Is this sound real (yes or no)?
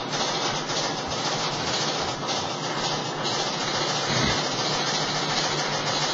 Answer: yes